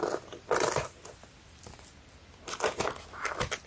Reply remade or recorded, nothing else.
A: recorded